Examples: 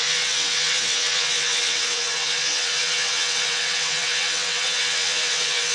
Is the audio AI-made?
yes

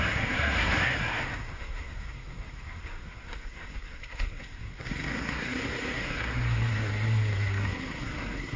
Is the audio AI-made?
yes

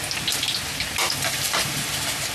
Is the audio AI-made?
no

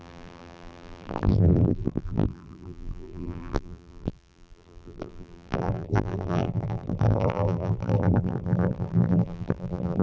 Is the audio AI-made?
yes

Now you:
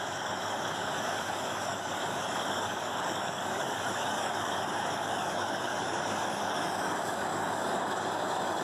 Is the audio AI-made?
yes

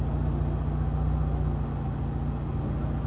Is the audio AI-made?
no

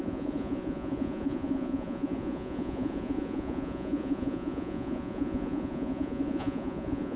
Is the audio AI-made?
yes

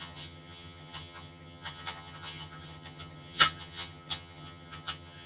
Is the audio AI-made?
yes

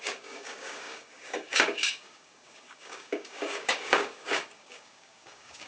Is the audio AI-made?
yes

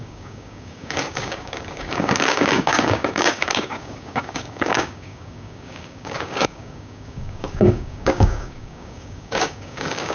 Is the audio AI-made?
yes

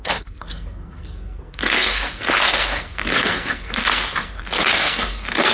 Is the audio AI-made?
yes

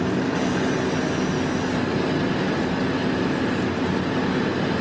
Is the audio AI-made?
no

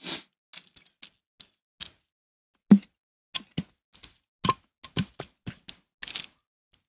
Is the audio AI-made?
no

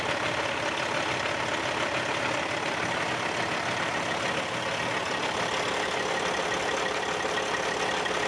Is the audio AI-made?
no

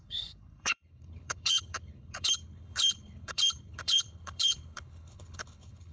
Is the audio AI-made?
yes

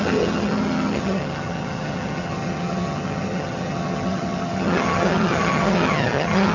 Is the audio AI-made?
yes